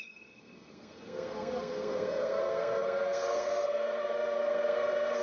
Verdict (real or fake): fake